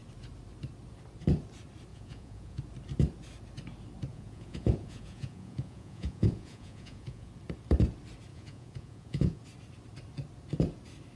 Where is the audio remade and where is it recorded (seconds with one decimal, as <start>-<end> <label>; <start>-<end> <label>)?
0.0-1.9 recorded; 1.9-2.6 remade; 2.6-4.1 recorded; 4.1-7.3 remade; 7.3-8.3 recorded; 8.3-9.4 remade; 9.4-11.2 recorded